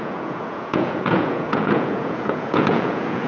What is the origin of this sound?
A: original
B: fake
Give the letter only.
B